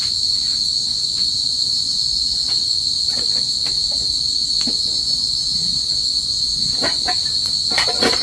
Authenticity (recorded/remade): remade